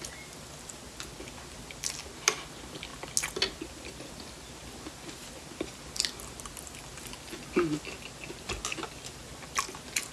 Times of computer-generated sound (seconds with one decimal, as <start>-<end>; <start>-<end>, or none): none